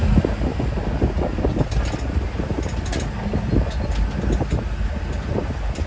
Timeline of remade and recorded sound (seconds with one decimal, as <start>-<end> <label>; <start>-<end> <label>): 0.0-0.5 recorded; 0.5-2.1 remade; 2.1-5.9 recorded